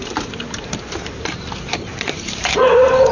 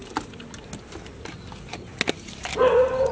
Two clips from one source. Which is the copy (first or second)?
first